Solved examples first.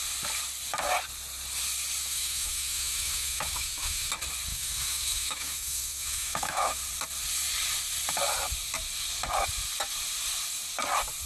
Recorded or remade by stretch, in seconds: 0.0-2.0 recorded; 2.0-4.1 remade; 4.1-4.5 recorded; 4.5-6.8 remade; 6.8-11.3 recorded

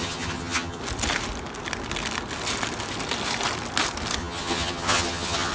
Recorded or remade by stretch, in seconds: 0.0-0.8 remade; 0.8-4.2 recorded; 4.2-5.5 remade

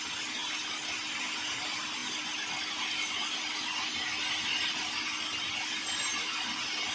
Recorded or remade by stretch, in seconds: 0.0-6.9 recorded

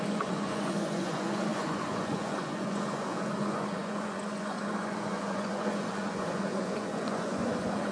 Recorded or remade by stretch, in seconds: 0.0-7.9 remade

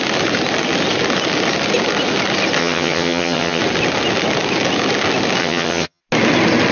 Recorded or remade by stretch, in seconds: 0.0-2.6 recorded; 2.6-3.6 remade; 3.6-5.4 recorded; 5.4-6.0 remade; 6.0-6.7 recorded

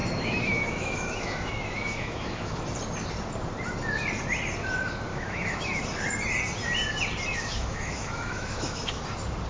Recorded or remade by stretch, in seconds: 0.0-2.6 remade; 2.6-5.1 recorded; 5.1-5.8 remade; 5.8-7.3 recorded; 7.3-9.0 remade; 9.0-9.5 recorded

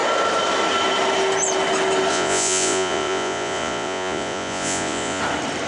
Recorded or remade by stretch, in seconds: 0.0-2.1 recorded; 2.1-5.2 remade; 5.2-5.7 recorded